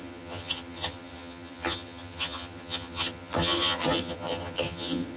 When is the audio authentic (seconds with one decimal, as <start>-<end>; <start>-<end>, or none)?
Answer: none